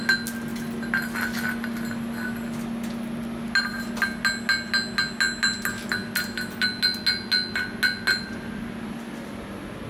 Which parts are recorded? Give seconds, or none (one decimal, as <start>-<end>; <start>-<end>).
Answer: 0.0-9.9